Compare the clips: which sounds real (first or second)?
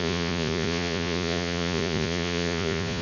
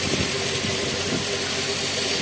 second